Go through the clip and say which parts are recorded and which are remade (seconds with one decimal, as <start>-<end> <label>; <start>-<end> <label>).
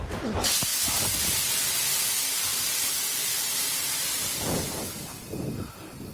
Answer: 0.0-2.5 recorded; 2.5-4.1 remade; 4.1-6.1 recorded